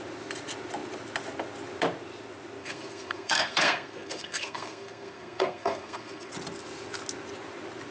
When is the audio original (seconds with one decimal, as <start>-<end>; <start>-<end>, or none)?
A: 0.0-2.6; 6.3-7.9